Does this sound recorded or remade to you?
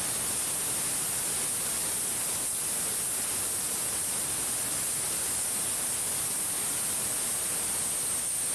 recorded